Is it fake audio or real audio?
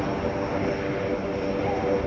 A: real